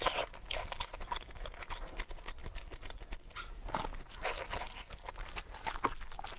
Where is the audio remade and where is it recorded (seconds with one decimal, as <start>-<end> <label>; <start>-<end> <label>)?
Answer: 0.0-6.4 recorded